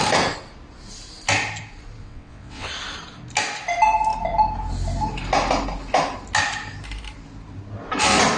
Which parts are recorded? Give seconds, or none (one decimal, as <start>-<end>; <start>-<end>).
0.0-2.0; 2.7-8.4